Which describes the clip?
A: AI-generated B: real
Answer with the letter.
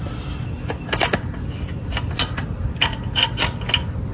B